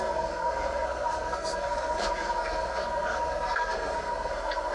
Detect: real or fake fake